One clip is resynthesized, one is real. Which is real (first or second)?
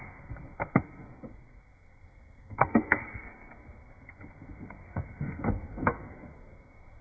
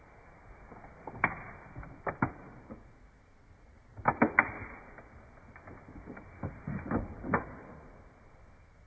second